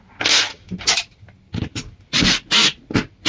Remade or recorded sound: recorded